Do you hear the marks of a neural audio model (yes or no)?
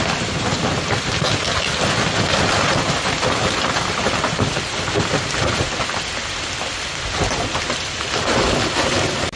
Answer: no